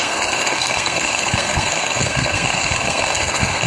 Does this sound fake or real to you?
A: fake